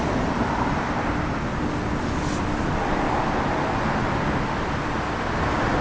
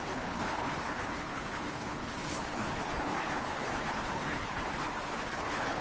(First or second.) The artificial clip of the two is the second